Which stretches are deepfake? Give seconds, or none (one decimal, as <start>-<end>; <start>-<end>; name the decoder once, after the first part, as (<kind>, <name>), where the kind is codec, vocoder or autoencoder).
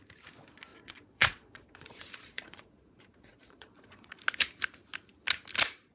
0.7-4.2 (vocoder, Vocos)